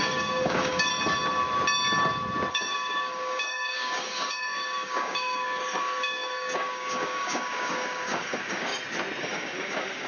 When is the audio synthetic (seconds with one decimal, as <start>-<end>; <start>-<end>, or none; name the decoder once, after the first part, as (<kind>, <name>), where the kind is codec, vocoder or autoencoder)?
0.0-0.9 (codec, DAC); 2.5-8.7; 9.2-10.1

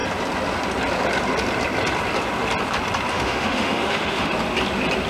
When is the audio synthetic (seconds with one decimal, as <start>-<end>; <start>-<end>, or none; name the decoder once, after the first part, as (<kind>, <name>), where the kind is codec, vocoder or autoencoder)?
3.1-4.3 (autoencoder, DAC-VAE)

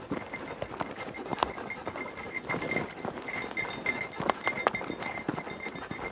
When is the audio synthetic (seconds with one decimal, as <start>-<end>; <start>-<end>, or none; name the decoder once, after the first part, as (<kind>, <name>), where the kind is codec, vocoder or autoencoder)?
none

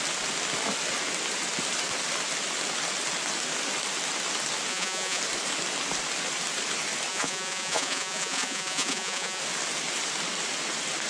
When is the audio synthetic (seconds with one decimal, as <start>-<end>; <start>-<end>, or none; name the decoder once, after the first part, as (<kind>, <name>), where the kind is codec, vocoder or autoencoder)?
4.7-5.2 (vocoder, Vocos); 7.1-9.4

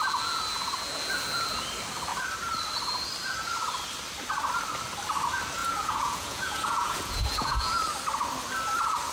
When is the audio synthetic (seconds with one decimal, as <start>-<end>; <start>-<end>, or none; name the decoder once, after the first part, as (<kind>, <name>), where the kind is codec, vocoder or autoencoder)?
5.6-7.8 (vocoder, Vocos)

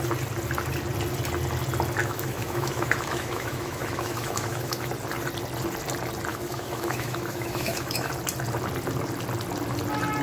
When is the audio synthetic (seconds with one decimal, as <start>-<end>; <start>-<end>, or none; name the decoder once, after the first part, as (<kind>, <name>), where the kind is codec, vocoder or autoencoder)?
2.0-4.9 (autoencoder, DAC-VAE); 6.3-8.1